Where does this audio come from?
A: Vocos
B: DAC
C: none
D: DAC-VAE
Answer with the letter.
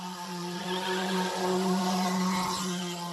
A